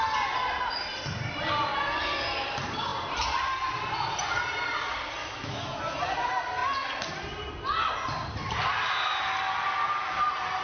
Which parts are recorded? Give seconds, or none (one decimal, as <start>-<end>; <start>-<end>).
0.0-5.2; 5.8-10.6

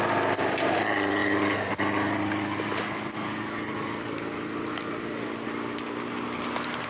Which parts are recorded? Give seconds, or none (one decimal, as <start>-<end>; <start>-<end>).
0.0-6.9

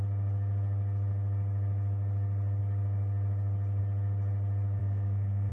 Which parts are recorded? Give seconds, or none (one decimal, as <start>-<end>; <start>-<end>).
0.0-4.8

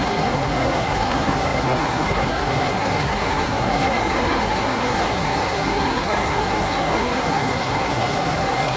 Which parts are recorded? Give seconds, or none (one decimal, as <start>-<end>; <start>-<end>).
none

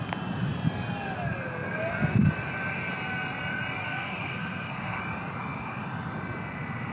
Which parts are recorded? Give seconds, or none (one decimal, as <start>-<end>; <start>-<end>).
0.0-3.8; 5.0-6.9

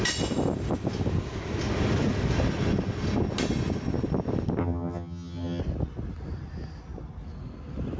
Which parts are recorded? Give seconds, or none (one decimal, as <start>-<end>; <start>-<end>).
0.0-4.6; 5.6-8.0